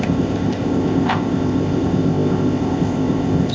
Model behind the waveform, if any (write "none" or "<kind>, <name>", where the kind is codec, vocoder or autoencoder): codec, ZipCodec